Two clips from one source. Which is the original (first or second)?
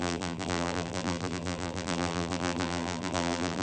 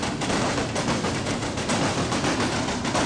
second